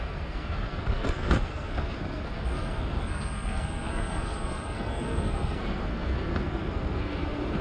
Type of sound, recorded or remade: remade